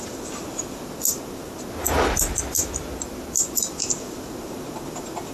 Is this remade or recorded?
recorded